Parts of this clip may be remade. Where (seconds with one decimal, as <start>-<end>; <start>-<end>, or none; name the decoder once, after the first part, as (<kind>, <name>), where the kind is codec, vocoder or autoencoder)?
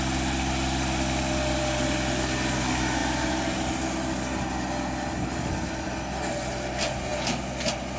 none